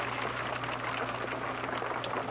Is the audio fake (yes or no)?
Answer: no